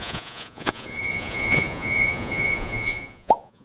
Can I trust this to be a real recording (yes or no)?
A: no